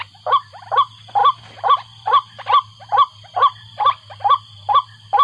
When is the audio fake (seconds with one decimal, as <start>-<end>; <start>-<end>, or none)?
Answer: none